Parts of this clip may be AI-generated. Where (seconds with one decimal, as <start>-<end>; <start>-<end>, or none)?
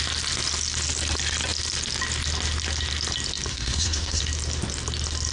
3.5-4.2